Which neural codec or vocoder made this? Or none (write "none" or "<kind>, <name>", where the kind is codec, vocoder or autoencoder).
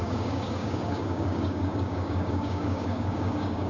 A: codec, DAC